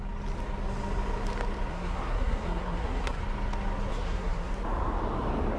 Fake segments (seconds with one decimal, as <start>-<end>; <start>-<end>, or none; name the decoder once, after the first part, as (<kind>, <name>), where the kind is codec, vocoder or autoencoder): 1.7-3.2 (codec, SNAC); 3.9-4.5